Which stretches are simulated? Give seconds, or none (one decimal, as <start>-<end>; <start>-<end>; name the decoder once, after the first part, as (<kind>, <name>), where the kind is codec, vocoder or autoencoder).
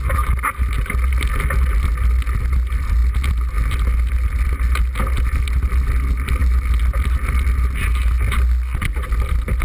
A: none